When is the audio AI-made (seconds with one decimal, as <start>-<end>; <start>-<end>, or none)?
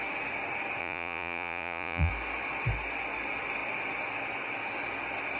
0.8-2.1